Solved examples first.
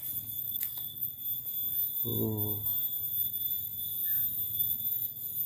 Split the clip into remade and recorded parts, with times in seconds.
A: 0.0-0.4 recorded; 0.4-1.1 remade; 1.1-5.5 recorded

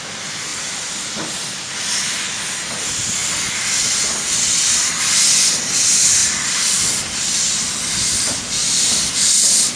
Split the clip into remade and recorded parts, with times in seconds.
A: 0.0-0.5 recorded; 0.5-1.9 remade; 1.9-6.2 recorded; 6.2-9.1 remade; 9.1-9.8 recorded